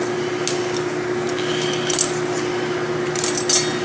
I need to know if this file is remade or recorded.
recorded